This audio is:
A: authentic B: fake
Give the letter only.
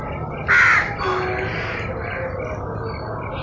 A